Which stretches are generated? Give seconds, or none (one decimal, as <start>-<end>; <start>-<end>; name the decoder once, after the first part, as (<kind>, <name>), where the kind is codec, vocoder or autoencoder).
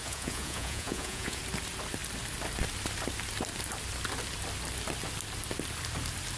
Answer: 0.0-1.4 (vocoder, Vocos)